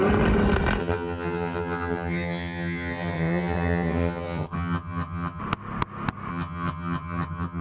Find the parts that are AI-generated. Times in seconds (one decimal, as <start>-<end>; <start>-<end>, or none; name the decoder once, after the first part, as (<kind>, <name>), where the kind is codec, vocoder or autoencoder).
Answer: 0.8-5.4 (vocoder, HiFi-GAN); 6.3-7.6